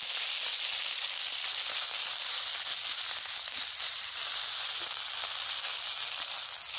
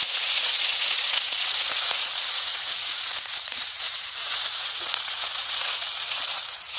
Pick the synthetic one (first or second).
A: second